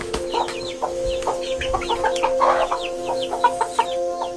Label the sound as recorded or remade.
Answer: remade